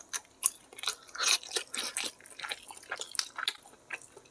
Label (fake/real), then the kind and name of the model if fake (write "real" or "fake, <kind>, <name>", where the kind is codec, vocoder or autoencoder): real